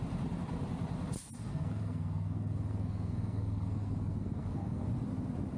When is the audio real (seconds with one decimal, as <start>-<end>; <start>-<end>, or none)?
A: 0.0-1.5; 4.9-5.6